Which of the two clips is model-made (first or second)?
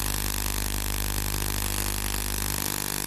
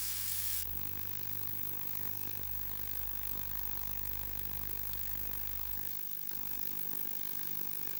second